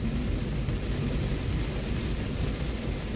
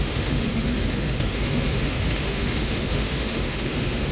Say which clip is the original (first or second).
first